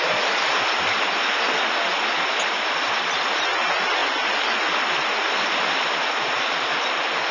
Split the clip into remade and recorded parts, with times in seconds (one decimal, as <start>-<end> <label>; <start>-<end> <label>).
0.0-7.3 recorded